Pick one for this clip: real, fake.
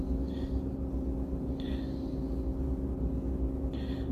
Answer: real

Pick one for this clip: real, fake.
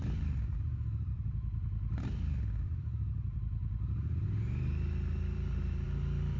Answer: fake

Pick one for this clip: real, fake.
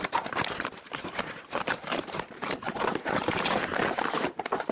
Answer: fake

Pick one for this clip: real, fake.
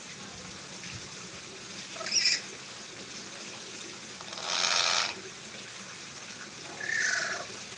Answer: real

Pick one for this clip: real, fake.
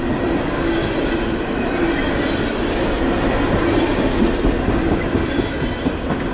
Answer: fake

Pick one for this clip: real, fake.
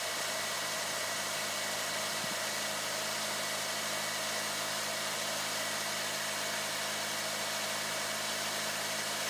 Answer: real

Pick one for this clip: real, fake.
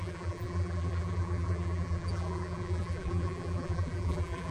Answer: fake